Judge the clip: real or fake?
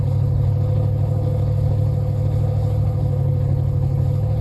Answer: fake